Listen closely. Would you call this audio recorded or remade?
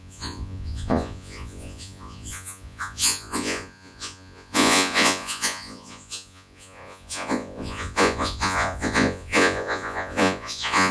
remade